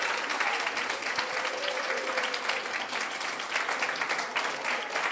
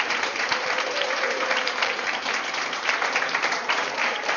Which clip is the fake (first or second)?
second